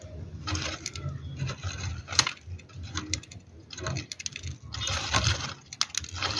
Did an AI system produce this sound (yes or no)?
no